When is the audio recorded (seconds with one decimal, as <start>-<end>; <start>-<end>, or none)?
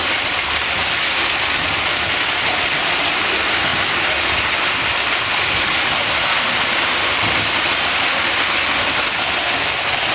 0.0-10.1